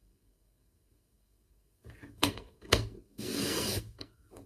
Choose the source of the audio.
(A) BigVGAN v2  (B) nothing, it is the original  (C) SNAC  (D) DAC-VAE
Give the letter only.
C